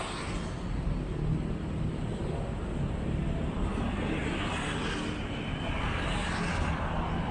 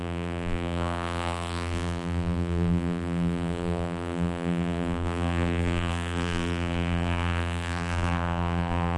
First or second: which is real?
first